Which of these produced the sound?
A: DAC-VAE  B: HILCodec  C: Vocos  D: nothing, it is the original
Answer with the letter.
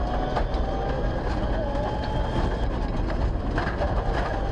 D